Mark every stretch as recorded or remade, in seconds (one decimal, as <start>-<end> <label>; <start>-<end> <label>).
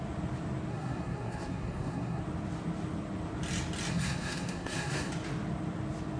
0.0-0.7 recorded; 0.7-2.2 remade; 2.2-3.9 recorded; 3.9-5.1 remade; 5.1-6.2 recorded